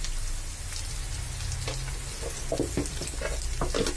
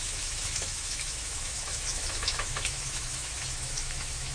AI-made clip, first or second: second